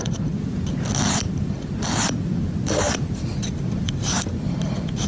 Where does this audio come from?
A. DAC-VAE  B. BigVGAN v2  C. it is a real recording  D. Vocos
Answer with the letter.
B